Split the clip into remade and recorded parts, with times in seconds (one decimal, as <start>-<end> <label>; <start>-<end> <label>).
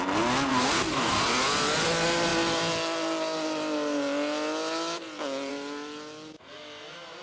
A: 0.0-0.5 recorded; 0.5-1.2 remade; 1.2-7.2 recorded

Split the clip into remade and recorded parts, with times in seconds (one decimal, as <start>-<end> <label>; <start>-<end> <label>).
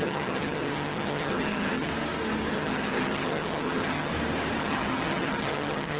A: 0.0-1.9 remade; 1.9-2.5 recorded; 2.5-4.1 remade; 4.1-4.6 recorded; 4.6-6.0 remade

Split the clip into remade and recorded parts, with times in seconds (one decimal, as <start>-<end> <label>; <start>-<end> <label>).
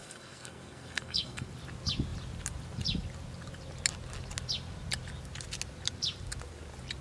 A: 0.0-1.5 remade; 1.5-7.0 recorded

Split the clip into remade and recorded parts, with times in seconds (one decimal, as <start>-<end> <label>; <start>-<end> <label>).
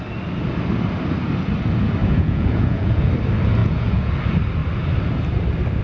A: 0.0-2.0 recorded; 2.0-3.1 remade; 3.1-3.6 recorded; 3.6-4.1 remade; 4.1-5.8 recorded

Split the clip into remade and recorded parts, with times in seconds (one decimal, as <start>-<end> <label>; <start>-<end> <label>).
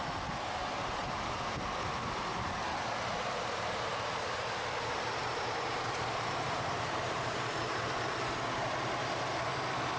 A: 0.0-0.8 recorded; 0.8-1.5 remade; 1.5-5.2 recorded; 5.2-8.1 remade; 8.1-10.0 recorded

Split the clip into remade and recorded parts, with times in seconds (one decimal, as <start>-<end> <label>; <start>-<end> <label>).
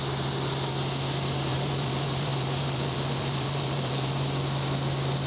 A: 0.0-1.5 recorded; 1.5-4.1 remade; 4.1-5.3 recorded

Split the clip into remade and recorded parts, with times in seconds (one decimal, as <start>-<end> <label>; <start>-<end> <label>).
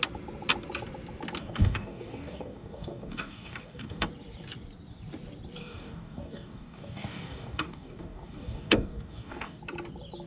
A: 0.0-1.4 recorded; 1.4-4.1 remade; 4.1-5.6 recorded; 5.6-9.6 remade; 9.6-10.3 recorded